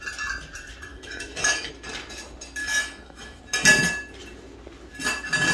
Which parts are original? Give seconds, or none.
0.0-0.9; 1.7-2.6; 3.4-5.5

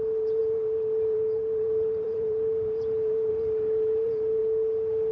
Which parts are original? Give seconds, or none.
4.4-5.1

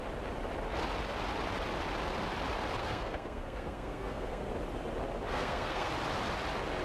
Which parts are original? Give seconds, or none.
0.0-2.8; 4.5-5.3; 5.9-6.8

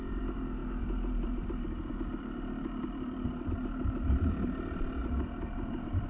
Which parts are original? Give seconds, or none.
0.0-0.6; 4.3-5.0

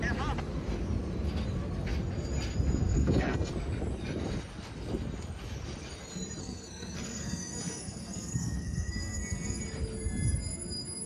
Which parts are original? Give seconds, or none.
0.0-2.9; 3.5-6.4; 9.6-11.1

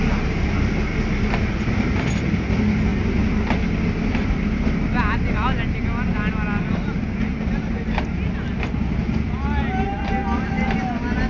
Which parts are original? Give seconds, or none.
0.0-11.3

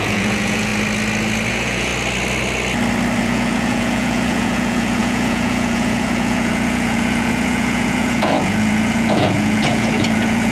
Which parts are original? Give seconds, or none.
0.7-1.5; 1.9-3.2

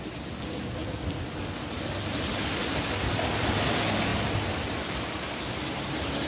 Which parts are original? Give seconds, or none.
0.0-6.3